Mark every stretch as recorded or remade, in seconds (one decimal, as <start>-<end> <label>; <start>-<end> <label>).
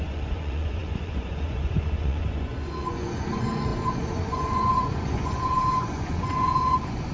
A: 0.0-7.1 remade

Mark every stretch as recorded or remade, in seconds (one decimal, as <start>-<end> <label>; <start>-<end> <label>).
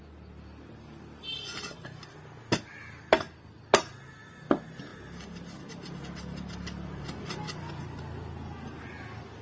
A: 0.0-9.4 recorded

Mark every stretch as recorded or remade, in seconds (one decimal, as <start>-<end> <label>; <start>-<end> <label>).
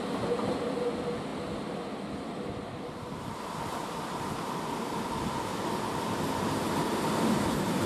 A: 0.0-7.9 recorded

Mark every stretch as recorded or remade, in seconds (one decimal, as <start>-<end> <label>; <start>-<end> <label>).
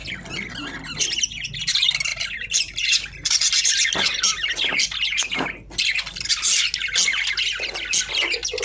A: 0.0-8.6 recorded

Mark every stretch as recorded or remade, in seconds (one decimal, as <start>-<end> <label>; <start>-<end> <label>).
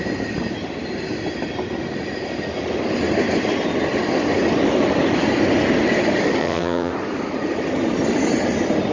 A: 0.0-6.4 recorded; 6.4-6.9 remade; 6.9-8.9 recorded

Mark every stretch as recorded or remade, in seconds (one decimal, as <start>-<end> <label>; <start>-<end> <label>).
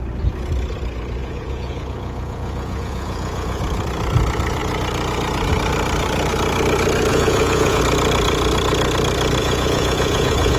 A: 0.0-1.2 recorded; 1.2-3.6 remade; 3.6-7.1 recorded; 7.1-7.8 remade; 7.8-9.4 recorded; 9.4-10.6 remade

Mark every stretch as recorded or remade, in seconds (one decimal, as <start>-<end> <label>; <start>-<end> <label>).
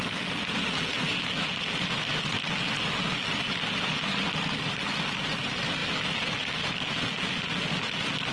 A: 0.0-8.3 recorded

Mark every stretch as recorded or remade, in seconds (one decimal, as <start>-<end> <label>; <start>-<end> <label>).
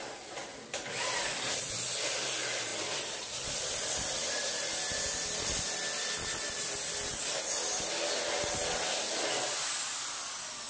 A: 0.0-10.7 recorded